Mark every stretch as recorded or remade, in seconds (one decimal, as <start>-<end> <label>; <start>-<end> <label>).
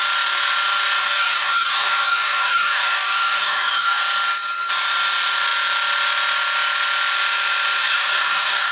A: 0.0-1.0 recorded; 1.0-4.0 remade; 4.0-7.8 recorded; 7.8-8.7 remade